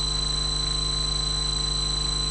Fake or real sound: real